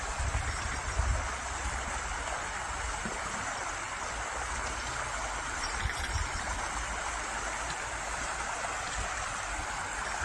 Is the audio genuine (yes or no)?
yes